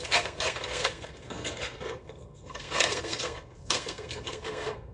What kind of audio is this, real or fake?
fake